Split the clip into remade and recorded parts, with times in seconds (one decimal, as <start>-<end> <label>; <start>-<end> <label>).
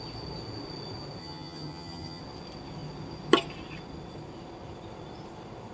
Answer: 0.0-1.2 recorded; 1.2-2.2 remade; 2.2-5.7 recorded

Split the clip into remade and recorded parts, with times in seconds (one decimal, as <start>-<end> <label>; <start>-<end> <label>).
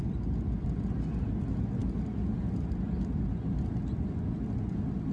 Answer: 0.0-5.1 recorded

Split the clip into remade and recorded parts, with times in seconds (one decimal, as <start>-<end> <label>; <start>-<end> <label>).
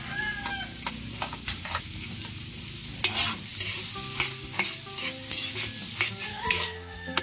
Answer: 0.0-6.3 recorded; 6.3-7.2 remade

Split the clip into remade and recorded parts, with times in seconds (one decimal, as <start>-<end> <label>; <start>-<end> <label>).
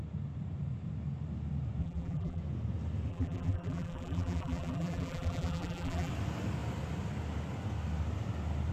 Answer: 0.0-1.8 recorded; 1.8-2.4 remade; 2.4-3.1 recorded; 3.1-6.1 remade; 6.1-8.7 recorded